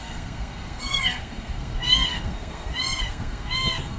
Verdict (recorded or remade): remade